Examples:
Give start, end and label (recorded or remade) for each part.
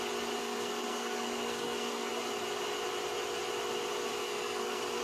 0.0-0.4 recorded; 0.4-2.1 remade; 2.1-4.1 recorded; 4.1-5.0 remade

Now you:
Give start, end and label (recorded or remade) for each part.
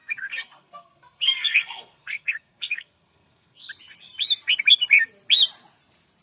0.0-3.7 remade; 3.7-6.2 recorded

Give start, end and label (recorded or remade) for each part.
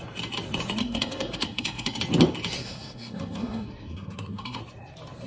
0.0-0.8 recorded; 0.8-2.0 remade; 2.0-2.6 recorded; 2.6-4.6 remade; 4.6-5.3 recorded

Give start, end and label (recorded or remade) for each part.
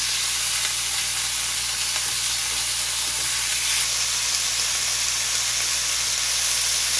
0.0-7.0 recorded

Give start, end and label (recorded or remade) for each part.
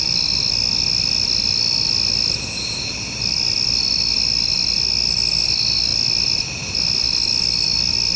0.0-8.2 recorded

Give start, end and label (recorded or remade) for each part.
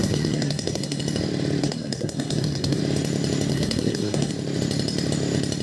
0.0-1.0 remade; 1.0-1.6 recorded; 1.6-2.8 remade; 2.8-3.5 recorded; 3.5-4.3 remade; 4.3-5.6 recorded